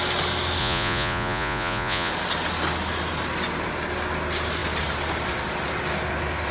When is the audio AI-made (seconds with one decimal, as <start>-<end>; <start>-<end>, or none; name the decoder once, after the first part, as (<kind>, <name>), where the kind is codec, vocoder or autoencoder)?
0.6-2.1 (vocoder, Vocos)